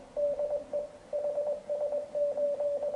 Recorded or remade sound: recorded